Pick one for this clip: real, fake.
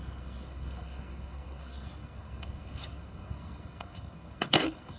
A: fake